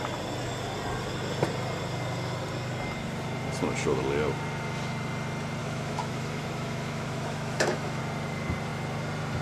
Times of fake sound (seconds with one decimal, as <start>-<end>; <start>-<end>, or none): 5.6-8.0